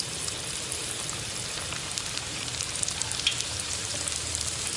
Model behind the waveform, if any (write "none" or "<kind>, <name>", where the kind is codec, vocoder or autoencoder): vocoder, BigVGAN v2